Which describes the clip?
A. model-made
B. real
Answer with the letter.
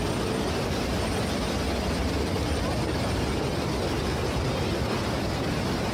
B